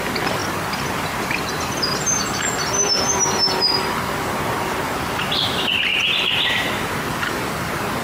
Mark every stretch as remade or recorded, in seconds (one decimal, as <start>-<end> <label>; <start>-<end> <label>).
0.0-5.9 recorded; 5.9-6.5 remade; 6.5-8.0 recorded